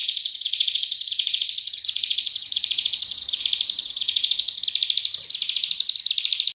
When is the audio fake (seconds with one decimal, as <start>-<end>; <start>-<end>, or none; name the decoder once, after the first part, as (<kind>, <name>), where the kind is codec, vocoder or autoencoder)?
0.0-3.4 (vocoder, Vocos); 3.8-4.6